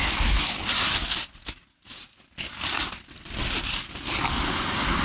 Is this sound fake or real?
real